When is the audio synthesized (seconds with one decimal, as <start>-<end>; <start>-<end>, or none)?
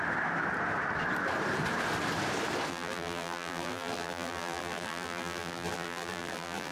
2.7-6.7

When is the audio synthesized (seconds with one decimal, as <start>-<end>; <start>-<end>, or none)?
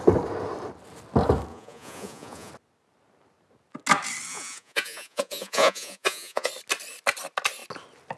1.5-2.5; 4.3-6.5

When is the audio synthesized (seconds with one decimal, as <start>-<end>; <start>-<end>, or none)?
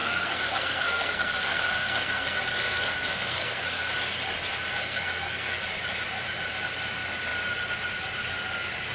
0.0-3.9; 4.8-5.6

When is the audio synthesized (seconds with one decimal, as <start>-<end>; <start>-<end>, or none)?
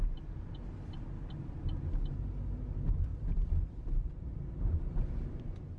3.1-5.1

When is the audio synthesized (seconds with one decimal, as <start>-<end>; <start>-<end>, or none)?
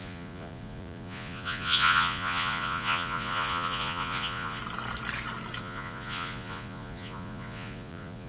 0.0-4.6; 5.6-8.3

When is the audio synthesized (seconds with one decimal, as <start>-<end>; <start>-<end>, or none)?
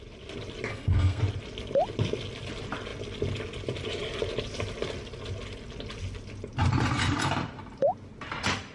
0.7-1.2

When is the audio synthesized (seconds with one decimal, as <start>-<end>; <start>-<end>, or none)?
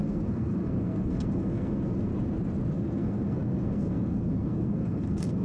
0.0-2.1; 2.7-5.4